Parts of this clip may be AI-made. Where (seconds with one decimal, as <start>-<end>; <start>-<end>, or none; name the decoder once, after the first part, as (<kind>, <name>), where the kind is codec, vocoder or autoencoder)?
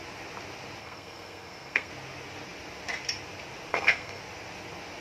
0.8-1.9 (codec, SNAC); 3.7-4.2